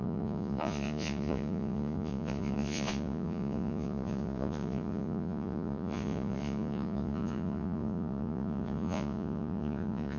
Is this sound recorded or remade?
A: remade